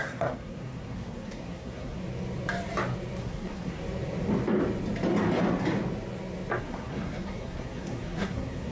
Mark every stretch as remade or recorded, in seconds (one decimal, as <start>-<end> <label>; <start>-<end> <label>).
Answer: 0.0-2.0 remade; 2.0-3.2 recorded; 3.2-3.8 remade; 3.8-6.6 recorded; 6.6-8.7 remade